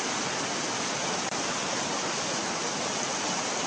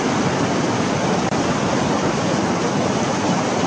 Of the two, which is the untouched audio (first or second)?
first